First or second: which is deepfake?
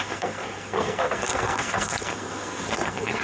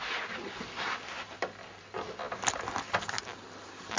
first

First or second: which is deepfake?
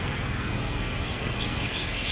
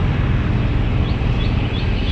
first